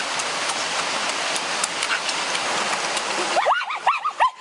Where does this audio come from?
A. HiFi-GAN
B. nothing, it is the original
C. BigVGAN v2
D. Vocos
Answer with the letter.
B